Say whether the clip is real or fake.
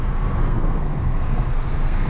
fake